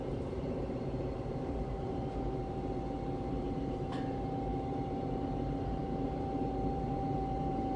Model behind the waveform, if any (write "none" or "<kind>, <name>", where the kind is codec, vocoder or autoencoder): vocoder, BigVGAN v2